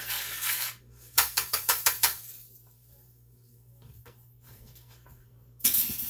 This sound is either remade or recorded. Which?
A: remade